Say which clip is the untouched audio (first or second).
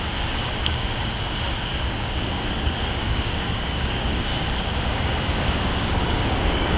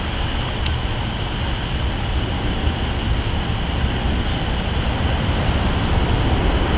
second